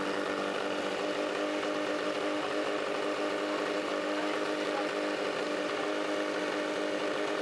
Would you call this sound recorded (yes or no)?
yes